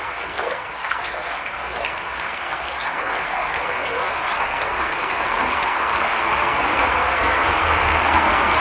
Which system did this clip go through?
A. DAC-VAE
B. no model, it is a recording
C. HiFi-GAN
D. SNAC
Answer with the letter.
D